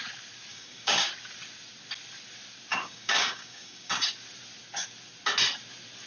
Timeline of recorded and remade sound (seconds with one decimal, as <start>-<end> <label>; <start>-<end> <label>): 0.0-0.5 recorded; 0.5-1.1 remade; 1.1-2.7 recorded; 2.7-3.9 remade; 3.9-6.1 recorded

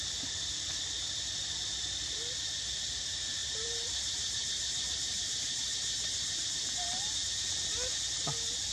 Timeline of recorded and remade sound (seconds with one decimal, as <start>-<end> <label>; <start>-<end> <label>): 0.0-3.4 recorded; 3.4-6.7 remade; 6.7-8.7 recorded

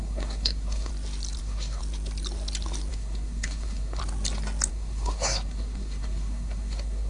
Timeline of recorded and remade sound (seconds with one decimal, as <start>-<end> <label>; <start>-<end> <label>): 0.0-0.9 remade; 0.9-1.4 recorded; 1.4-1.8 remade; 1.8-2.9 recorded; 2.9-4.0 remade; 4.0-4.7 recorded; 4.7-7.1 remade